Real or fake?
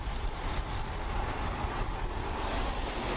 real